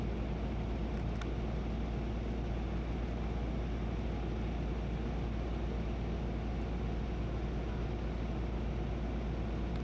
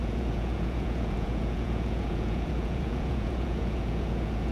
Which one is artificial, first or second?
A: second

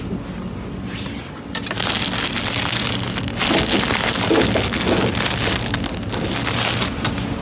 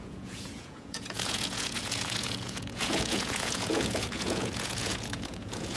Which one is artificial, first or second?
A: second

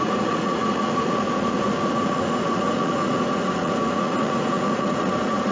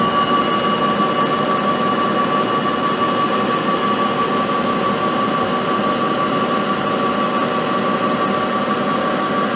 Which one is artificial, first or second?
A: first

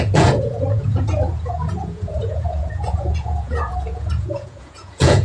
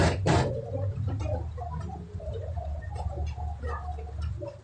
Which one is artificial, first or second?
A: first